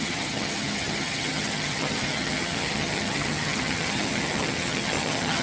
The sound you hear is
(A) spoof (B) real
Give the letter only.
A